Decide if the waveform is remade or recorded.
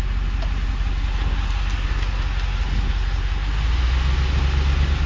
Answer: recorded